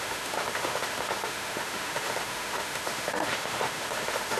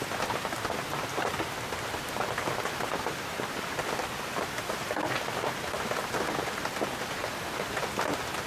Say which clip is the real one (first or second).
second